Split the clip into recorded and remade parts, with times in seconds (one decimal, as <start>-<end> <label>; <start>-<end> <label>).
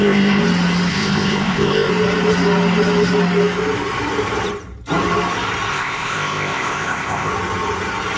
0.0-0.4 remade; 0.4-0.9 recorded; 0.9-1.9 remade; 1.9-5.7 recorded; 5.7-7.3 remade; 7.3-8.2 recorded